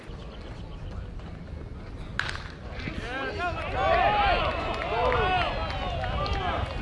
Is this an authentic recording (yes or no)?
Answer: yes